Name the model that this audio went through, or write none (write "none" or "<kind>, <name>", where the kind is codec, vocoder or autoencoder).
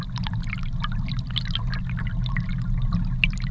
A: none